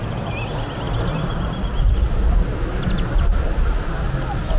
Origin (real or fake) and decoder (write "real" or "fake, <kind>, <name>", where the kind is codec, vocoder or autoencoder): real